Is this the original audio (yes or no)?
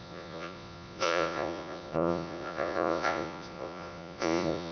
no